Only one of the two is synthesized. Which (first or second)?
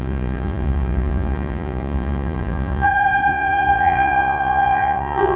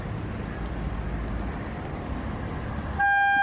first